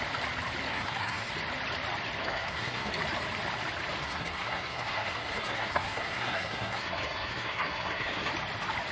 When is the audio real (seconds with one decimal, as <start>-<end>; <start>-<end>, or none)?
0.0-0.7; 1.3-2.2; 2.9-4.0; 8.3-8.9